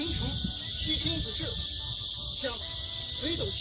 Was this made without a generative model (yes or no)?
yes